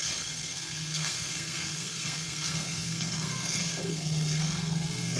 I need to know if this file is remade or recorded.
remade